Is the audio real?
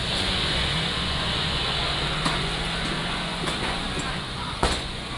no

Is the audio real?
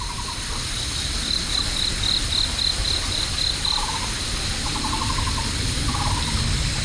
yes